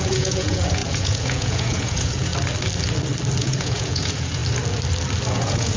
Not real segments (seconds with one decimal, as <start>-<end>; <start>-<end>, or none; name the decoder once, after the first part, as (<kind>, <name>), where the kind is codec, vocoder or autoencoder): 0.0-2.3 (vocoder, Vocos); 3.4-4.4; 5.3-5.8